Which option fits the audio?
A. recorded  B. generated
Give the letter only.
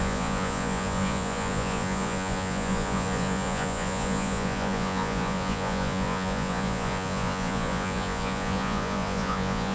B